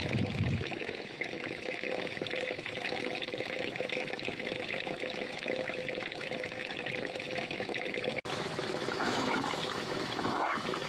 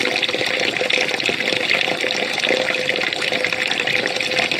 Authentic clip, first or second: second